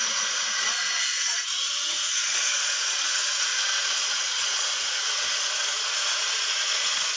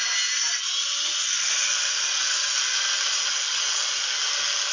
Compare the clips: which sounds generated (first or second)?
first